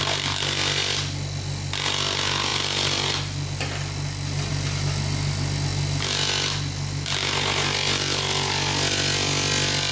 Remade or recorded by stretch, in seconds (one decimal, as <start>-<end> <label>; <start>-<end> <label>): 0.0-9.9 recorded